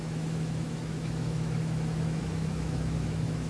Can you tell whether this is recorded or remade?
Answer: remade